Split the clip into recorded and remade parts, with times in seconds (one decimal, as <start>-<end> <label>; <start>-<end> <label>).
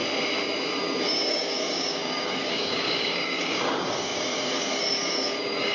0.0-1.3 recorded; 1.3-5.7 remade